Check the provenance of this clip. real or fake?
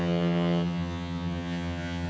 fake